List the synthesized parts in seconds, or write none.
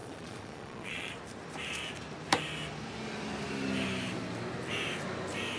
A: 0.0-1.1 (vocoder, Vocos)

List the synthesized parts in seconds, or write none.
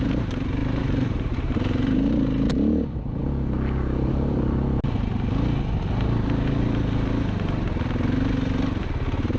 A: 0.6-2.1 (vocoder, BigVGAN v2)